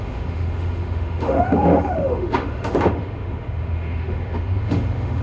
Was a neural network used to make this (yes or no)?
yes